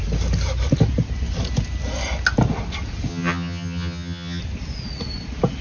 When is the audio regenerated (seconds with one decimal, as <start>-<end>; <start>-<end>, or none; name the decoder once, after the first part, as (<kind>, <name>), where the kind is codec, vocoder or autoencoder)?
3.1-4.4 (vocoder, HiFi-GAN)